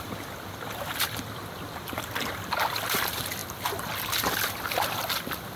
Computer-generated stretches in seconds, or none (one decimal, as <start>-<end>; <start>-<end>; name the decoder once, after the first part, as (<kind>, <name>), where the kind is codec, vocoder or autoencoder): 0.0-5.6 (vocoder, BigVGAN v2)